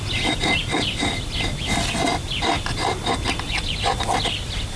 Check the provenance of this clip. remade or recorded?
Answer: recorded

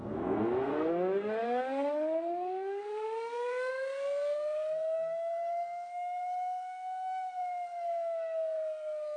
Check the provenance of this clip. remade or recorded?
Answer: remade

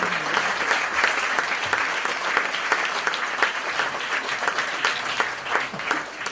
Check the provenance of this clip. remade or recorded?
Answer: recorded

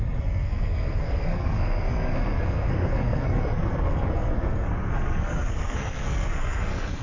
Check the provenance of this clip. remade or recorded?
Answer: remade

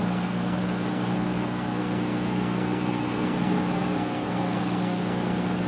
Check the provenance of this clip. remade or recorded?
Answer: remade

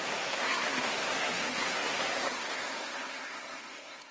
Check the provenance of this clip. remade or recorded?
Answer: remade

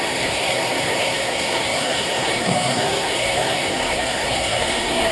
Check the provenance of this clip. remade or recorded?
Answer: remade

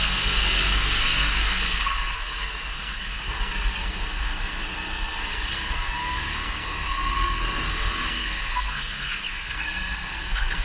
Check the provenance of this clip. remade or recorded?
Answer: remade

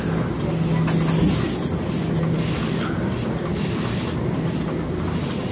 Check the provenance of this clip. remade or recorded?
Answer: recorded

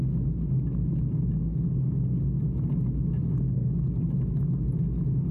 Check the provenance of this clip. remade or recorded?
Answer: recorded